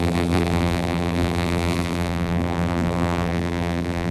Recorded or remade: remade